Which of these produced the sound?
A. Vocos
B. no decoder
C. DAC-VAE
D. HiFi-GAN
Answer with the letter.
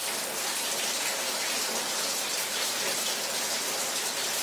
B